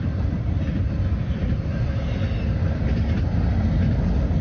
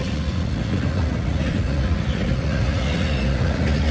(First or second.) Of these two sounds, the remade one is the second